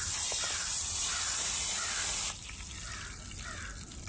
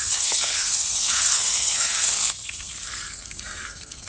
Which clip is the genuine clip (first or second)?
first